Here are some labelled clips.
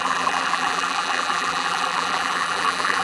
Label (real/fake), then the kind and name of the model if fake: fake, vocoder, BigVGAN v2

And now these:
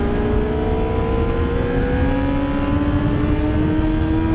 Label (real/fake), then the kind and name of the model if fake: real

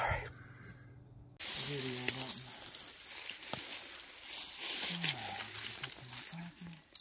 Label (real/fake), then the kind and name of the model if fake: real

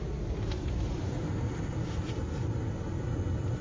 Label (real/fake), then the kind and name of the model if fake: real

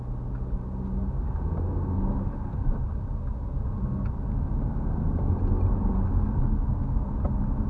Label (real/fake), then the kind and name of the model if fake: real